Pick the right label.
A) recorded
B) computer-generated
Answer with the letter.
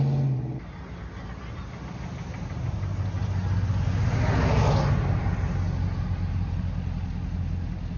A